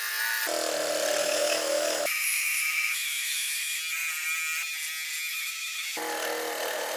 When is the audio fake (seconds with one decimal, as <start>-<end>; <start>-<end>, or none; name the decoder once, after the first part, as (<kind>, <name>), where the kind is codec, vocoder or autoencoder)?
1.2-3.8 (autoencoder, DAC-VAE); 5.3-6.0